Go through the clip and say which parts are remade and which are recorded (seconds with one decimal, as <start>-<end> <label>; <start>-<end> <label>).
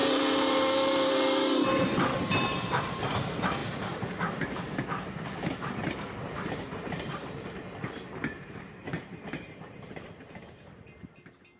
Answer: 0.0-3.0 remade; 3.0-3.6 recorded; 3.6-4.6 remade; 4.6-6.2 recorded; 6.2-10.1 remade; 10.1-11.6 recorded